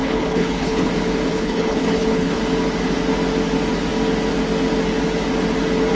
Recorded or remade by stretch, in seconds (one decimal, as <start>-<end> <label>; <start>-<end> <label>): 0.0-0.9 remade; 0.9-1.3 recorded; 1.3-2.4 remade; 2.4-5.9 recorded